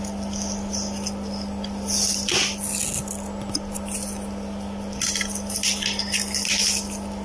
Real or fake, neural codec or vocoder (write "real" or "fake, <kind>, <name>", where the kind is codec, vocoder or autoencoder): real